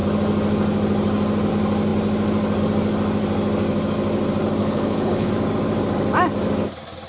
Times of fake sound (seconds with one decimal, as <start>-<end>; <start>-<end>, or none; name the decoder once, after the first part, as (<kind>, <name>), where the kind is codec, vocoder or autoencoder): 4.6-5.3 (codec, HILCodec)